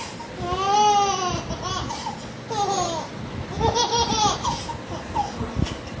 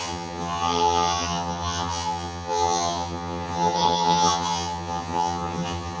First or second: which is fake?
second